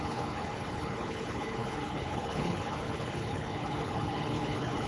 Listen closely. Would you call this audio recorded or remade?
remade